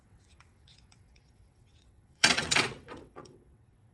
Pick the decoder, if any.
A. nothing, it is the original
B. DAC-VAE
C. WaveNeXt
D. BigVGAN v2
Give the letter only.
C